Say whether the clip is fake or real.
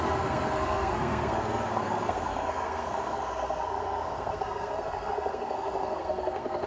fake